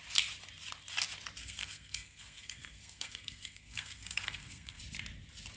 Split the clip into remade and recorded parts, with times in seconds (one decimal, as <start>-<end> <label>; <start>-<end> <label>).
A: 0.0-1.4 recorded; 1.4-4.8 remade; 4.8-5.6 recorded